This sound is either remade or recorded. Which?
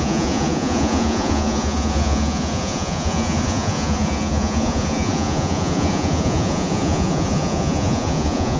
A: remade